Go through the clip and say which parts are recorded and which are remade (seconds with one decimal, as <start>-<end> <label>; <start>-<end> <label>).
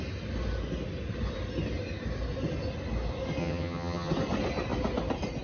0.0-3.4 recorded; 3.4-4.1 remade; 4.1-5.4 recorded